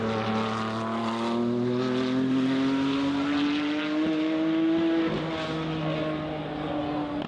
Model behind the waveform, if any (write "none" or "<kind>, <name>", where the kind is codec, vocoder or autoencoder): none